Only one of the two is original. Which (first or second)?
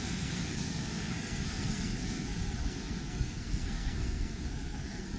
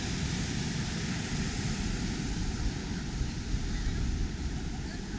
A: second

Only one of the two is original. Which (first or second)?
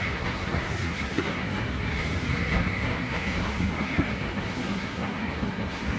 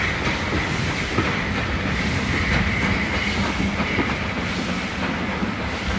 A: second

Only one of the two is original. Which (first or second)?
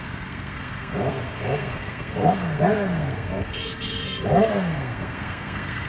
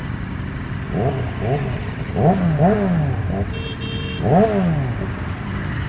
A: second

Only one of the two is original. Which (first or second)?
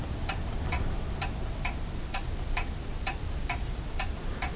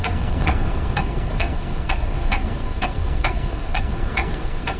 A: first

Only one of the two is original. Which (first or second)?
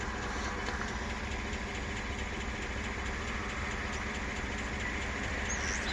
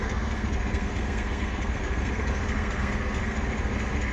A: first